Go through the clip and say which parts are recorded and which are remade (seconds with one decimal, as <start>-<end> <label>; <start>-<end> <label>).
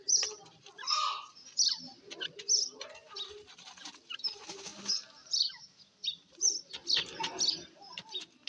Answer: 0.0-8.5 recorded